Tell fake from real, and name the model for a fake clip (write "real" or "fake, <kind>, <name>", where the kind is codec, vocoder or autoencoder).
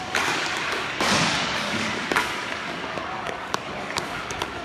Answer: fake, codec, DAC